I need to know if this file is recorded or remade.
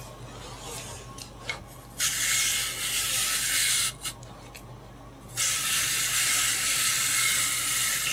recorded